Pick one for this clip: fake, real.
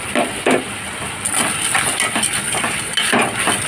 real